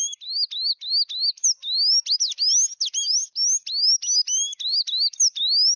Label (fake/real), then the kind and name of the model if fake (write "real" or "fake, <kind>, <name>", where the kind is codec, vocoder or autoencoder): real